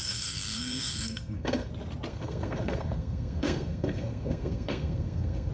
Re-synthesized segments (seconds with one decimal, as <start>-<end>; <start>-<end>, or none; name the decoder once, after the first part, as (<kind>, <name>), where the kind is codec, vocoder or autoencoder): 0.0-1.7 (codec, SNAC); 2.1-5.5